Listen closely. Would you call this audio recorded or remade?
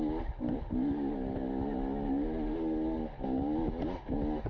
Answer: recorded